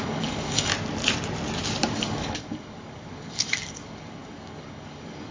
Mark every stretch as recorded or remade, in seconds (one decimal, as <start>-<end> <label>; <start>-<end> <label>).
0.0-0.7 remade; 0.7-1.9 recorded; 1.9-5.3 remade